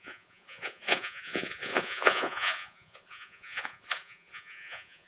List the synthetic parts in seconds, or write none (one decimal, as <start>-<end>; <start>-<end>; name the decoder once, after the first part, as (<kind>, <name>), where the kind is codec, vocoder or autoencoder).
0.0-5.1 (vocoder, Vocos)